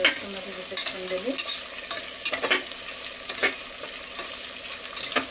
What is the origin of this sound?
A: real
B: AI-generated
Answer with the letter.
A